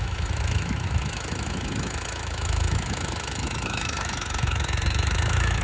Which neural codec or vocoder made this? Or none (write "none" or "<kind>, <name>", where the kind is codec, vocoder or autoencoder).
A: autoencoder, DAC-VAE